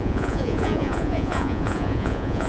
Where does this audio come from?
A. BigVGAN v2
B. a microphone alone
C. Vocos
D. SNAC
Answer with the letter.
C